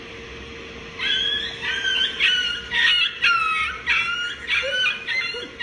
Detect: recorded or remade recorded